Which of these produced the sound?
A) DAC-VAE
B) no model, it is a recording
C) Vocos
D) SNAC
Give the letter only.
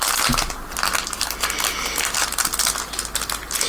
B